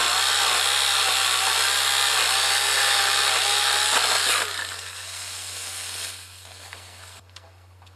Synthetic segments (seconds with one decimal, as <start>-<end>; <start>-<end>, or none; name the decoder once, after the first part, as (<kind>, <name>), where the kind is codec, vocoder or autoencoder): 4.7-8.0 (codec, SNAC)